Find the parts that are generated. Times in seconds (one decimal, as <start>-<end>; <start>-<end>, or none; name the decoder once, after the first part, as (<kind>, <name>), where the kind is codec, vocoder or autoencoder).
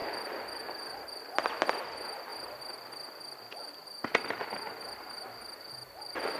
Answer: none